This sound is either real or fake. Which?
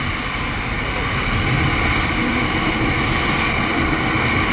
real